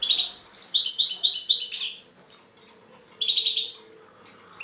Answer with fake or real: real